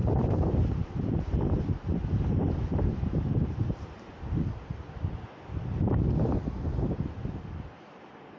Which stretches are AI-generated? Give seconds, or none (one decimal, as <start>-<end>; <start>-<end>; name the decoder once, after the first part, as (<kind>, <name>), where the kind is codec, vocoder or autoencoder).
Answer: 0.0-1.2 (vocoder, BigVGAN v2); 1.9-4.1

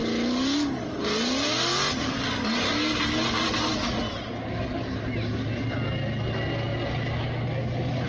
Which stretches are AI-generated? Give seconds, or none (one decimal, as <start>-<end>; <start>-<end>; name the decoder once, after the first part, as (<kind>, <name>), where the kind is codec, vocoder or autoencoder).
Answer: none

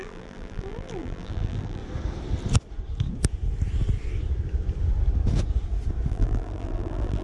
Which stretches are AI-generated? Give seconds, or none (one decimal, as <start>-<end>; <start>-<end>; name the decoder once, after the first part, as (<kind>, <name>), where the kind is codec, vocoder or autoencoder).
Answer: 0.0-1.8 (vocoder, BigVGAN v2); 6.1-7.2

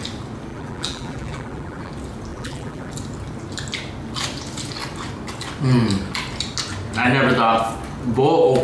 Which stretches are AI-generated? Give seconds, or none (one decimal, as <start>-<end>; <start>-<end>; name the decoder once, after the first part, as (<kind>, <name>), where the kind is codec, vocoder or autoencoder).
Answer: 0.5-1.9 (vocoder, BigVGAN v2); 2.3-2.9